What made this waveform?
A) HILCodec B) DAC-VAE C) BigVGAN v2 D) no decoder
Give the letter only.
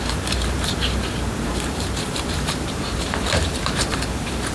C